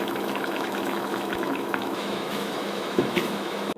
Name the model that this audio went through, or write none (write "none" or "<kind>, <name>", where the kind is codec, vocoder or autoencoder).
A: autoencoder, DAC-VAE